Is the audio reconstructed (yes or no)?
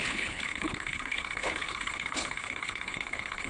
yes